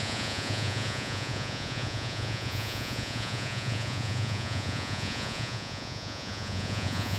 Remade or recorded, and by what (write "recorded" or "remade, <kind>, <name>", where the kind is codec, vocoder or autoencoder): remade, vocoder, Vocos